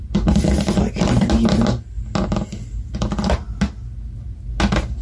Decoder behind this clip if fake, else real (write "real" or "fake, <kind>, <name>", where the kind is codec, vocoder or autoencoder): real